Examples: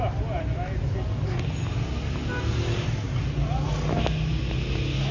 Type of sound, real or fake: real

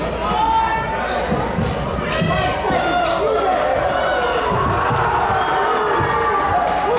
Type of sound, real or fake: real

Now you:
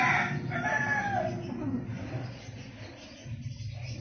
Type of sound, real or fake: real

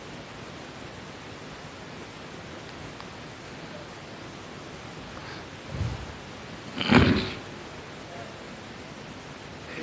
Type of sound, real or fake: real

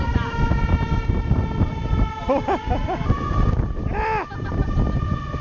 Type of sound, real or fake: real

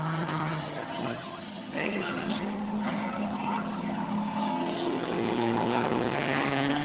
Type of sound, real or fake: fake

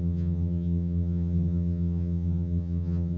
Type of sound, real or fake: fake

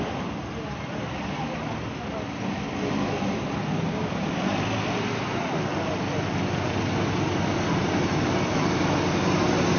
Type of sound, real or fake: real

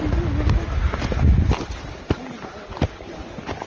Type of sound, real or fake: real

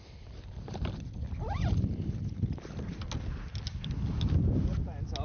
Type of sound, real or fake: real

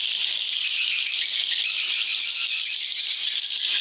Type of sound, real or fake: real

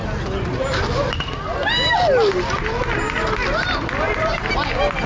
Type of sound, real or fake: real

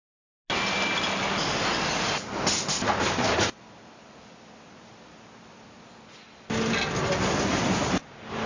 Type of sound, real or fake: real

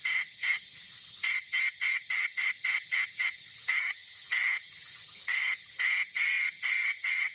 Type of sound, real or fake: fake